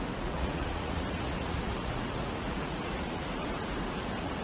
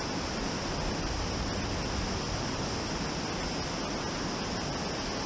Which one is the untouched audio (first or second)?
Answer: second